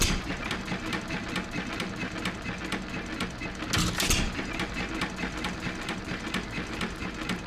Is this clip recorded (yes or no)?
yes